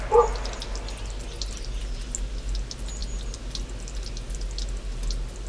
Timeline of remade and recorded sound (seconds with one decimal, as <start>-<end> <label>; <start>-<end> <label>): 0.0-5.5 recorded